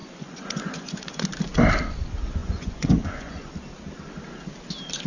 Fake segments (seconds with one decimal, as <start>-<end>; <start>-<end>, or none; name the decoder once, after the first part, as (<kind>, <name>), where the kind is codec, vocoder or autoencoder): 0.0-1.2 (vocoder, Vocos); 2.4-3.5